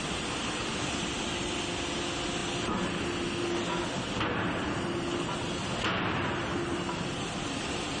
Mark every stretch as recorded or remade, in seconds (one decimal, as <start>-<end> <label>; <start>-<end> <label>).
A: 0.0-8.0 recorded